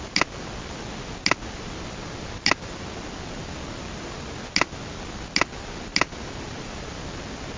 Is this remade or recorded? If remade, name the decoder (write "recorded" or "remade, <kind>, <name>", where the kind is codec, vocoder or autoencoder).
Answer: recorded